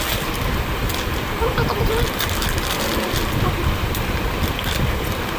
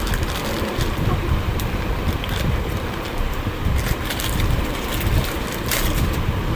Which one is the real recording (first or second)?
first